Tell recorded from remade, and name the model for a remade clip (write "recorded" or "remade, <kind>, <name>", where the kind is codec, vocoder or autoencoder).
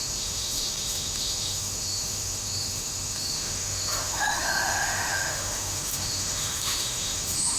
remade, autoencoder, DAC-VAE